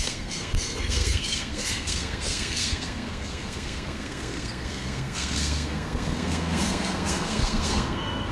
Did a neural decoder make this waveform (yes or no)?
yes